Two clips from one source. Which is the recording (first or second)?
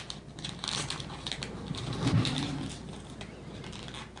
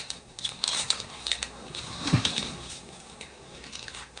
first